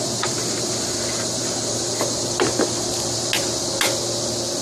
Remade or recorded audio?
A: recorded